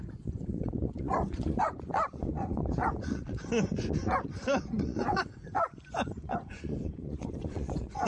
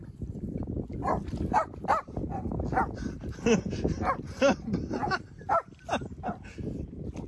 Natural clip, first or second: second